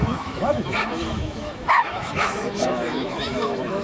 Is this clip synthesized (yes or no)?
yes